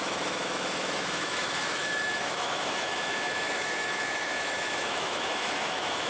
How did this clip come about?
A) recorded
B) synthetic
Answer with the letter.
B